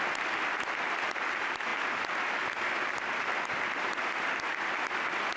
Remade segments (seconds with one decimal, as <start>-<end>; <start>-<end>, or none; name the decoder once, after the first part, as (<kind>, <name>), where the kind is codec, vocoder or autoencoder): none